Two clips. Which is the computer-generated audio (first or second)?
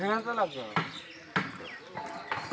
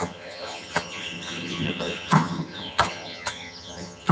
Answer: second